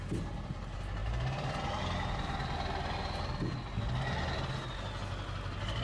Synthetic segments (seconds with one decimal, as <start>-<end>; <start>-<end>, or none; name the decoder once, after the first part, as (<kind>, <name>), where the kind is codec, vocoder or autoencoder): 1.0-1.8 (vocoder, BigVGAN v2)